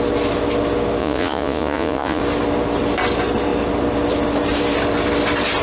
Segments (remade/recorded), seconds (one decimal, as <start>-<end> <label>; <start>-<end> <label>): 0.0-1.0 recorded; 1.0-2.2 remade; 2.2-5.6 recorded